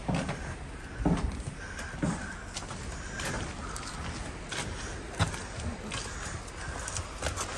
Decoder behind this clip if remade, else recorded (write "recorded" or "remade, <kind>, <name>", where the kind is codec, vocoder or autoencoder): recorded